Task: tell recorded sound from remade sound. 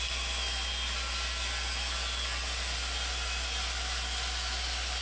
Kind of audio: remade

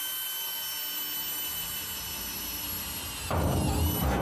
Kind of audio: recorded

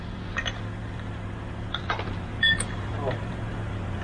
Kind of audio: remade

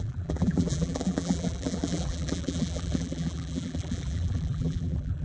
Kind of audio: remade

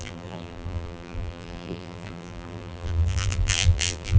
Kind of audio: remade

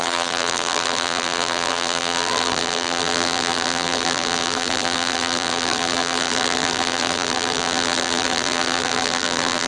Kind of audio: remade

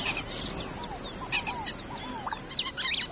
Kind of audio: recorded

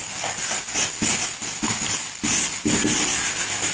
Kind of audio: recorded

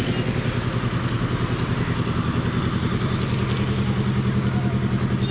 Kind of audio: recorded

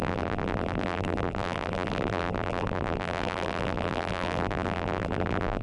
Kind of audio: remade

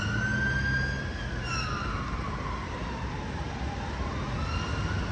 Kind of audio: recorded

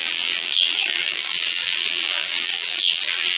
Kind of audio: remade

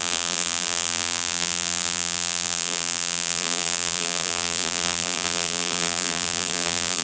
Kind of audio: remade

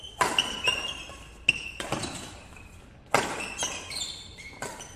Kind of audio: recorded